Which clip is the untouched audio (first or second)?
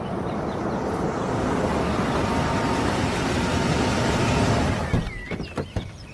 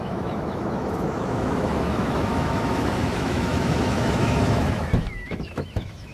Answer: first